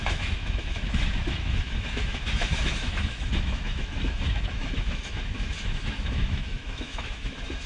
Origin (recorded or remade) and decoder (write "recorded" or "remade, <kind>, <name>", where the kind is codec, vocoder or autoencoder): remade, autoencoder, DAC-VAE